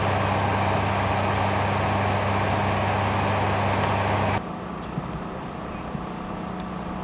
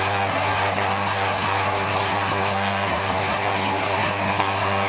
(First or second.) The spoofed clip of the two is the second